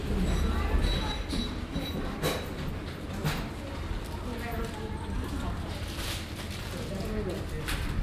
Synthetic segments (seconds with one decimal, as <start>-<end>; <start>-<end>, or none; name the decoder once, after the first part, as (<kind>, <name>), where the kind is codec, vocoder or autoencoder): none